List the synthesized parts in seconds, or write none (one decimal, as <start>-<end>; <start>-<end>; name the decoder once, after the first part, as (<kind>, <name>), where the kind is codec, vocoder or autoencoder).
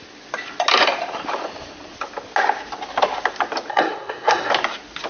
3.7-4.5 (codec, SNAC)